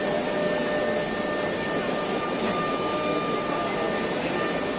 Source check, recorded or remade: recorded